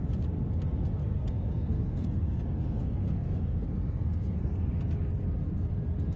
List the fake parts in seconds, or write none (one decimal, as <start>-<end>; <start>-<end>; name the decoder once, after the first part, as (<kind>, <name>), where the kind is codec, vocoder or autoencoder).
1.0-4.7 (codec, SNAC)